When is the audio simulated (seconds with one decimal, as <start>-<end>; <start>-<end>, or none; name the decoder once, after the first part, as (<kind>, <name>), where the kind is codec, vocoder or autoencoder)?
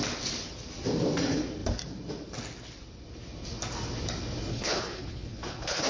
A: 4.5-5.9 (codec, HILCodec)